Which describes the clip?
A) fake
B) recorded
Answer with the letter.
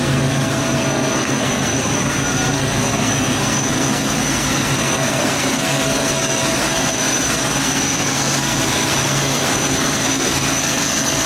A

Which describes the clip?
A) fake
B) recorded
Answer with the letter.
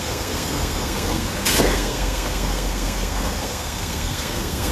A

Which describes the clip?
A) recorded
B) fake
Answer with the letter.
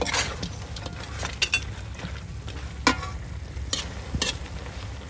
A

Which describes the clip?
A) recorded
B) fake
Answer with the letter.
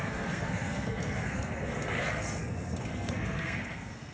B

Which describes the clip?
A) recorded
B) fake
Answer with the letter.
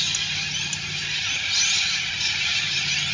A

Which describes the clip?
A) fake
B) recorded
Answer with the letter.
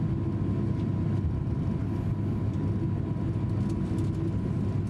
B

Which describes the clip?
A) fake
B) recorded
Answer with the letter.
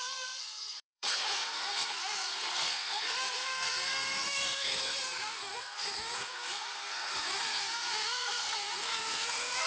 A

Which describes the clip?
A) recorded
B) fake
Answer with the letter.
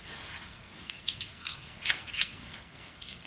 B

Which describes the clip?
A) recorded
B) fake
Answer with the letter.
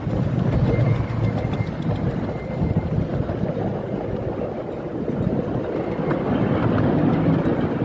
A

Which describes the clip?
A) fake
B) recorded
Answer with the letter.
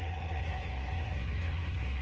A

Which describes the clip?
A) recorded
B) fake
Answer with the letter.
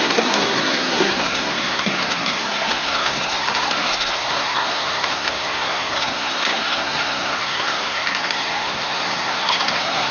B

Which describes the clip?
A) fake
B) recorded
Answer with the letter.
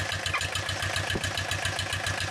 B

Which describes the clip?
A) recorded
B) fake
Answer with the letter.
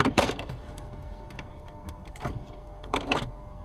B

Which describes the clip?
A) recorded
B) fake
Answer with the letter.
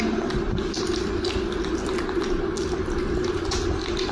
A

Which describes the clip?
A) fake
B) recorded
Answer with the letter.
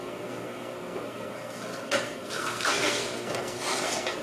A